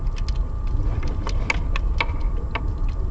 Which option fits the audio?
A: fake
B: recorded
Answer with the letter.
B